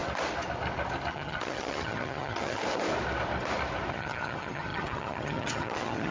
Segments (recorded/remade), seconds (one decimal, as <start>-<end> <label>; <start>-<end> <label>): 0.0-1.1 recorded; 1.1-2.6 remade; 2.6-3.9 recorded; 3.9-6.1 remade

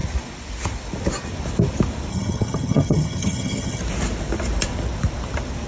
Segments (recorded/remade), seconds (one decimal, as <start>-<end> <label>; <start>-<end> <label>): 0.0-2.1 recorded; 2.1-3.8 remade; 3.8-5.7 recorded

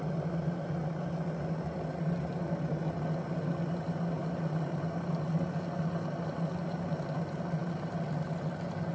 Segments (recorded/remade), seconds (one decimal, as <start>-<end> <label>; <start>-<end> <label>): 0.0-8.9 recorded

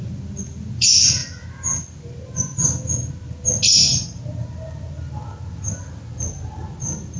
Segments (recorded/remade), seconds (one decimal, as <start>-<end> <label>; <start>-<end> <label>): 0.0-7.2 recorded

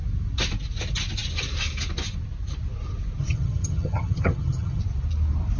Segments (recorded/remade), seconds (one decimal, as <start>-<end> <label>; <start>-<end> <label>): 0.0-3.2 recorded; 3.2-4.8 remade; 4.8-5.6 recorded

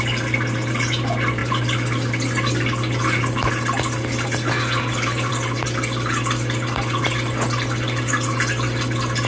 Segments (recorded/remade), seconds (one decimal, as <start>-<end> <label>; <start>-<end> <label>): 0.0-9.3 recorded